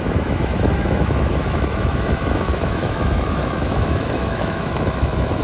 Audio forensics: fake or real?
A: fake